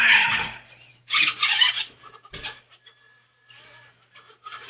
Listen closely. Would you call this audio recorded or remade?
recorded